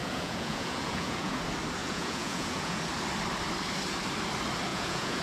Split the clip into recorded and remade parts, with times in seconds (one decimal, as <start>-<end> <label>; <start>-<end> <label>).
0.0-1.4 remade; 1.4-1.8 recorded; 1.8-2.8 remade; 2.8-4.7 recorded; 4.7-5.2 remade